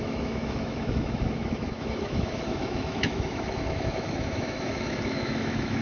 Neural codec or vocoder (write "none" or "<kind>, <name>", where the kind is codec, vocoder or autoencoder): autoencoder, DAC-VAE